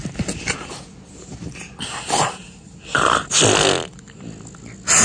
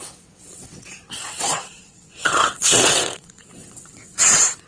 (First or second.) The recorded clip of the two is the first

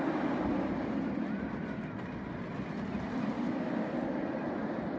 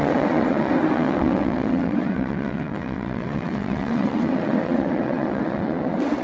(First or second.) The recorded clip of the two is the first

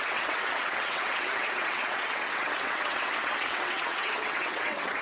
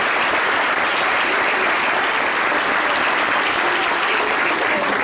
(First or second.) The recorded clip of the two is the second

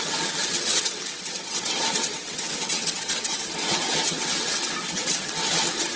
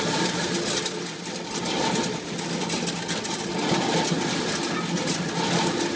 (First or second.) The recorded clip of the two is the second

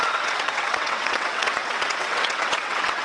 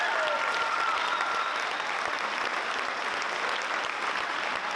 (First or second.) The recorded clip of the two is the second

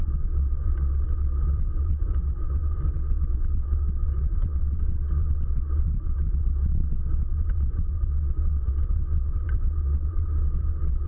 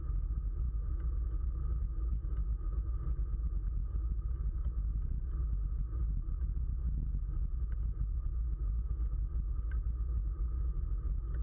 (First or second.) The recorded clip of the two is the second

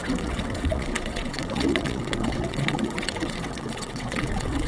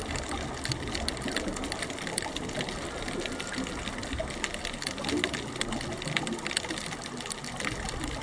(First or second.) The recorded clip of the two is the second